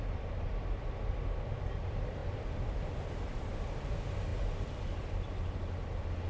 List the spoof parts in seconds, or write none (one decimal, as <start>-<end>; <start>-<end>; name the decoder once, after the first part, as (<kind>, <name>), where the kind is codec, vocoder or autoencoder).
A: 2.2-2.8 (vocoder, BigVGAN v2); 4.3-5.3

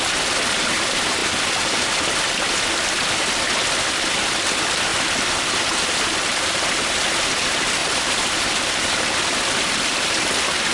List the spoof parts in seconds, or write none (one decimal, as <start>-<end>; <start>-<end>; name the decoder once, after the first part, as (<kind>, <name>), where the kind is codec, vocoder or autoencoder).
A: 7.8-9.0 (vocoder, BigVGAN v2)

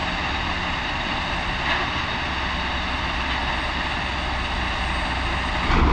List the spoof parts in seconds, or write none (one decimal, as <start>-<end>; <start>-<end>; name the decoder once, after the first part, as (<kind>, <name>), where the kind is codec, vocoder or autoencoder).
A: none

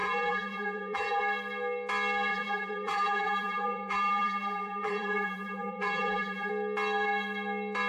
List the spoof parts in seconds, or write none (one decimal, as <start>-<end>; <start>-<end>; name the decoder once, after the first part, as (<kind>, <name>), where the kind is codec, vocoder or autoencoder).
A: 0.0-1.2 (vocoder, BigVGAN v2); 2.3-6.5

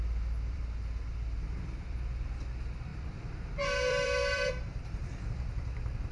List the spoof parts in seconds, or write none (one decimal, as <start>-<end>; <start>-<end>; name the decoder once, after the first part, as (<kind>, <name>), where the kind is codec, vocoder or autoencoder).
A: 0.0-6.1 (vocoder, BigVGAN v2)

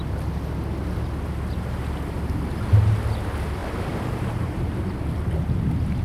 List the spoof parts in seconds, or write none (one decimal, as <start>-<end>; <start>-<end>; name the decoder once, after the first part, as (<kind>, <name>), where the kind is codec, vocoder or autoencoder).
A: 3.6-4.7 (vocoder, BigVGAN v2)